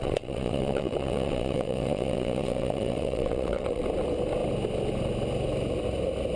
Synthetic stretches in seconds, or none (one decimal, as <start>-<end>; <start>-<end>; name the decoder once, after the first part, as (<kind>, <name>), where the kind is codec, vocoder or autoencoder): 0.0-3.8 (vocoder, WaveNeXt)